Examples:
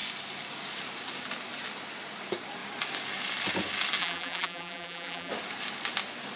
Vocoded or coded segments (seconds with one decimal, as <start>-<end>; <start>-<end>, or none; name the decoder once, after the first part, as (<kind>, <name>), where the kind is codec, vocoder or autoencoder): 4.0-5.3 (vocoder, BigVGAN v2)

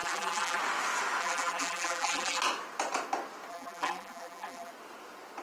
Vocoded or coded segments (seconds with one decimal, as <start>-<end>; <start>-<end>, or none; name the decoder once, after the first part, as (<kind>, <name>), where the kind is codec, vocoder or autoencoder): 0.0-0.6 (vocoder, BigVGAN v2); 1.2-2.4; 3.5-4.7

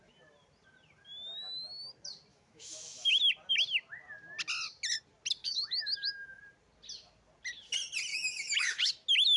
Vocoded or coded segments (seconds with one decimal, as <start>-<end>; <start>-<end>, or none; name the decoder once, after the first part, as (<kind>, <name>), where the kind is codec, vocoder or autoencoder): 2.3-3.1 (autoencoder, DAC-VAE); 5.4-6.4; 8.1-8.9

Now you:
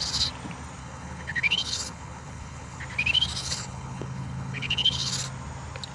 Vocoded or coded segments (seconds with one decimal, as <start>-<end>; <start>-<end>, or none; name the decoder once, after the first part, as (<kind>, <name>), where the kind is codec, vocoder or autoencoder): 0.8-2.8 (codec, HILCodec); 3.4-5.1

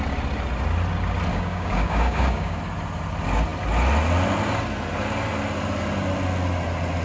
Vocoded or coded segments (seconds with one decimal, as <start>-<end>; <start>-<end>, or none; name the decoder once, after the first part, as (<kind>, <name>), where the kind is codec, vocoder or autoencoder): 1.3-2.6 (codec, DAC)

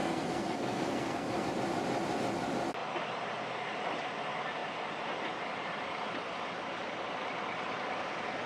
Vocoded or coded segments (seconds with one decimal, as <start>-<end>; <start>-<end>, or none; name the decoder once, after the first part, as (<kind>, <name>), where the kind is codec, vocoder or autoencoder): 0.0-1.5 (codec, SNAC)

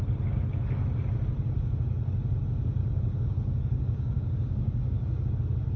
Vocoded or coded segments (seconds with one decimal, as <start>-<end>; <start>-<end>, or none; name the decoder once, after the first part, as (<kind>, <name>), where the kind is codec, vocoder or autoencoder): 2.8-5.3 (codec, DAC)

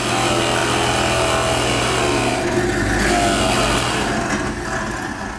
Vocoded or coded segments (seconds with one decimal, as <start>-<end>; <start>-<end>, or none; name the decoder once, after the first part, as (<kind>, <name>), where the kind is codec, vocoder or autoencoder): none